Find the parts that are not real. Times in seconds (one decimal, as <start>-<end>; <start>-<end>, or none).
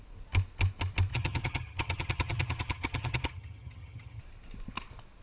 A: 1.1-4.2